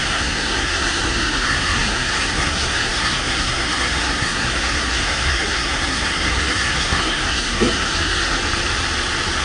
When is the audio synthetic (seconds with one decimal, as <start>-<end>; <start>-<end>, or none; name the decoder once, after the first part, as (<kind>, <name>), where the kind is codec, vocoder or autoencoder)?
0.0-8.4 (codec, SNAC)